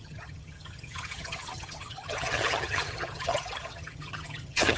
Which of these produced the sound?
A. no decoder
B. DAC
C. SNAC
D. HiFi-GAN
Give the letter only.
D